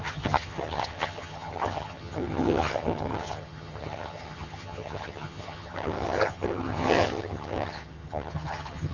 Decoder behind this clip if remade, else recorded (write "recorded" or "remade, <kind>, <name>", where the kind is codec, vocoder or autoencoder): remade, vocoder, HiFi-GAN